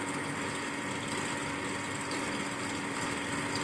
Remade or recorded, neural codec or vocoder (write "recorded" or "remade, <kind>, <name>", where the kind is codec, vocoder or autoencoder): recorded